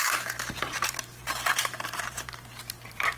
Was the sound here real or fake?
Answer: fake